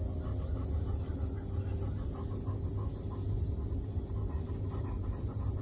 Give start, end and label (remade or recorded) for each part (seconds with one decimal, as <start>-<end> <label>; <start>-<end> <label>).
0.0-5.6 recorded